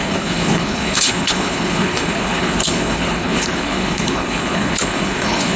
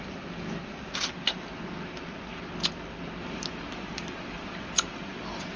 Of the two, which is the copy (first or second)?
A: first